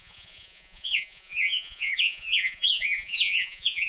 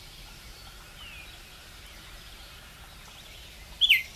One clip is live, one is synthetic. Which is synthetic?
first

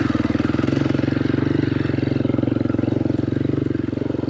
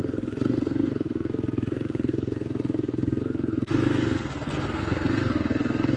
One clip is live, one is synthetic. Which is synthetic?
second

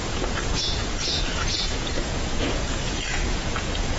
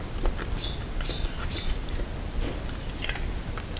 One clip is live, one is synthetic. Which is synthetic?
first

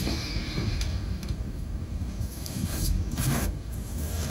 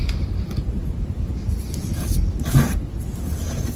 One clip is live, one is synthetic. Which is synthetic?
first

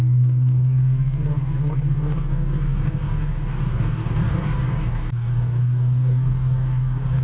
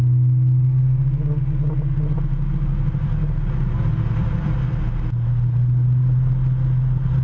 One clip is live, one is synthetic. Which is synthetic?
first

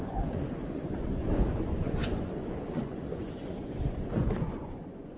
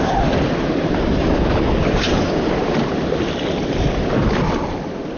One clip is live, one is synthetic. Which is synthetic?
first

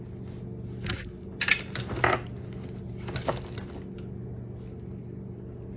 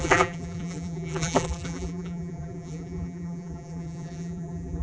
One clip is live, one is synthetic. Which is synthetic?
second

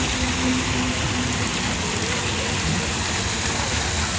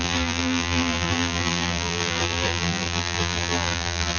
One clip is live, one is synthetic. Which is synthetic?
second